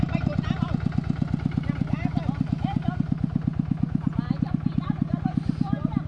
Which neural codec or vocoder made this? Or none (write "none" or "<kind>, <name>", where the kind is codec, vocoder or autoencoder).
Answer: none